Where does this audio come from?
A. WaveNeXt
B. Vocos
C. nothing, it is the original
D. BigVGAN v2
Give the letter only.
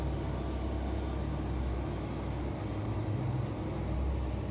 C